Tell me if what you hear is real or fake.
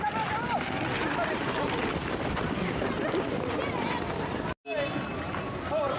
real